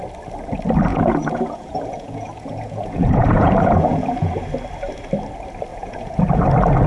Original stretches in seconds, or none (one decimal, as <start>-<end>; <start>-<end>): 0.0-0.9; 4.3-5.7; 6.4-6.9